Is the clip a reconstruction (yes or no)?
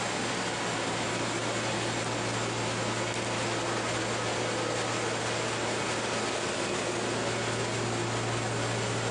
no